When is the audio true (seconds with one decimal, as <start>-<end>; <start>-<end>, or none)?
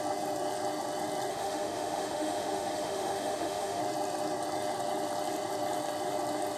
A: 0.0-1.3; 3.8-6.6